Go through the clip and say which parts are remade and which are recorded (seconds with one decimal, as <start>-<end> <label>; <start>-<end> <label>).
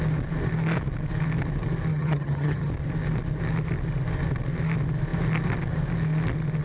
0.0-1.9 recorded; 1.9-2.7 remade; 2.7-6.6 recorded